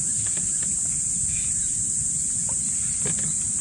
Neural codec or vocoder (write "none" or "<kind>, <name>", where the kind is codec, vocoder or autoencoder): none